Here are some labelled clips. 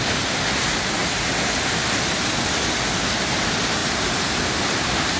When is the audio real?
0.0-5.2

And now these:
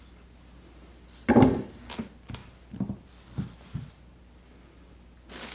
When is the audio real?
0.0-5.5